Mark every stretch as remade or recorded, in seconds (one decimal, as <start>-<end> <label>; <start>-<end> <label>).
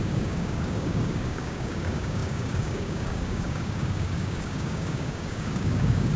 0.0-6.2 remade